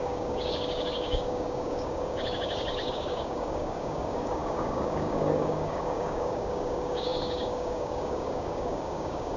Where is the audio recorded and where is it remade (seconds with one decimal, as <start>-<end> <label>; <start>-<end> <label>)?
0.0-9.4 remade